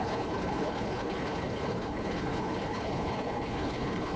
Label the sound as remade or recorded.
remade